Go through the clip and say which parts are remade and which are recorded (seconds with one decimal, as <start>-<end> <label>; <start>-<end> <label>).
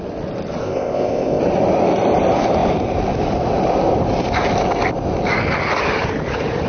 0.0-0.6 recorded; 0.6-1.4 remade; 1.4-6.7 recorded